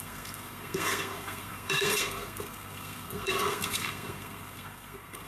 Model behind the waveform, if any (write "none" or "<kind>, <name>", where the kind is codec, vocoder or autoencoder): codec, SNAC